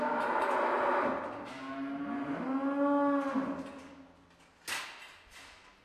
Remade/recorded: recorded